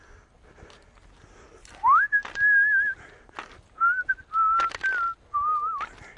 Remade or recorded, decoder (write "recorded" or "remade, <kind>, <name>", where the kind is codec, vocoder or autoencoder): recorded